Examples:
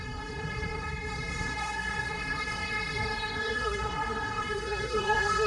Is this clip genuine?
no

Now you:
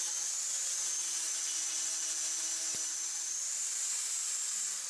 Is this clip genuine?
yes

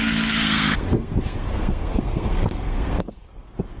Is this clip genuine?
no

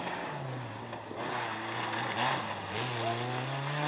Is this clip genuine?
yes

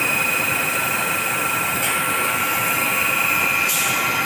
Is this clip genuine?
yes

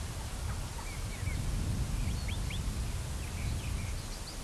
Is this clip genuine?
yes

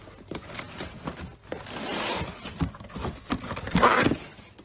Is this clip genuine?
yes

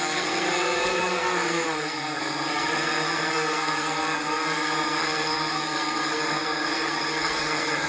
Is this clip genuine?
no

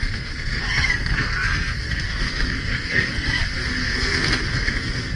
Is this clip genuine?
no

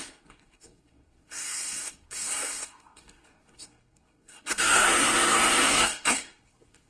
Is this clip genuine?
no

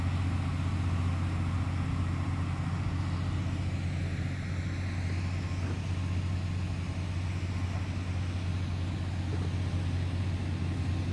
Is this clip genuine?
yes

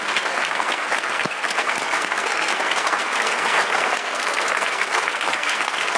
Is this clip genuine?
no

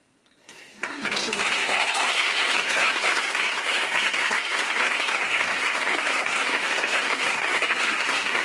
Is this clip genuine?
no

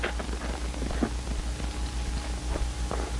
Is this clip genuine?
yes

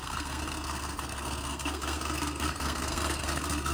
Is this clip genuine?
no